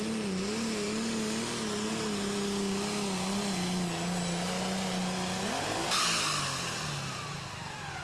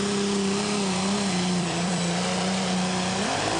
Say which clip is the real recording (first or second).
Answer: first